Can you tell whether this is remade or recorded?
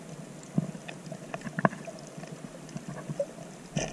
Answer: recorded